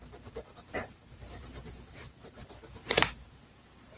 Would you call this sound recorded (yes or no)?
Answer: no